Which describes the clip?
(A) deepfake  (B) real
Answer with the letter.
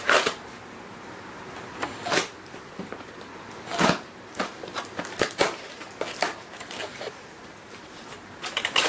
A